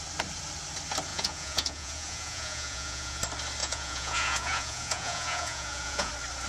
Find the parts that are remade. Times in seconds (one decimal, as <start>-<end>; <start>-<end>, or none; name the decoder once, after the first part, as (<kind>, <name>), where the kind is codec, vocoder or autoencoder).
1.1-3.2 (vocoder, Vocos); 3.6-6.1